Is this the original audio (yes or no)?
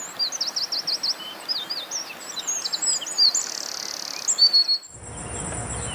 yes